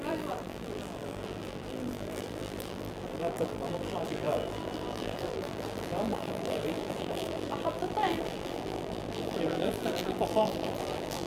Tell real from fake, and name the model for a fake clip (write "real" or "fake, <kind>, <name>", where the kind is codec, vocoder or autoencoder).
fake, vocoder, BigVGAN v2